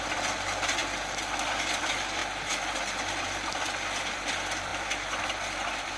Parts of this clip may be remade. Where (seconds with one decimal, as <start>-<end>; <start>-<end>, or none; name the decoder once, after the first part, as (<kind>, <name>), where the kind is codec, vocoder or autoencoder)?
0.0-2.2 (vocoder, BigVGAN v2); 3.1-6.0